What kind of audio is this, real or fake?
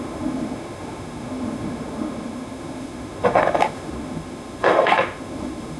fake